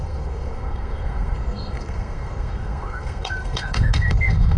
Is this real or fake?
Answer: fake